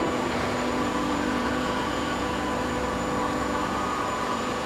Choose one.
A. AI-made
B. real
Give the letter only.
A